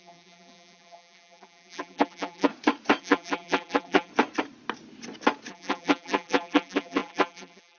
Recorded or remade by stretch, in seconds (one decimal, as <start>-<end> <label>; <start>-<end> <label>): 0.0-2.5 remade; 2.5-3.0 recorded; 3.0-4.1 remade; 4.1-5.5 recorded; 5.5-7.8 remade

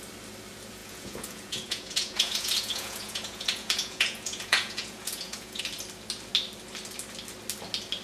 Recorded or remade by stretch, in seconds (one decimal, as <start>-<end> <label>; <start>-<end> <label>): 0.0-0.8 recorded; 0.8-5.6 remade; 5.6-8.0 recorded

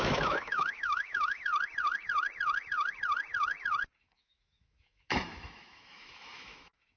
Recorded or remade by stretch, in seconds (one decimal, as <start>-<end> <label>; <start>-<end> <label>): 0.0-1.5 remade; 1.5-4.0 recorded; 4.0-7.0 remade

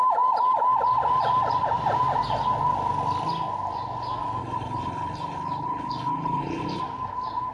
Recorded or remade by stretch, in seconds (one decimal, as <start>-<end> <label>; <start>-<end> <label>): 0.0-4.4 recorded; 4.4-6.8 remade; 6.8-7.5 recorded